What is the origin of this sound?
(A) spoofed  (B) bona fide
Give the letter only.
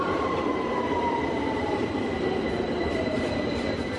A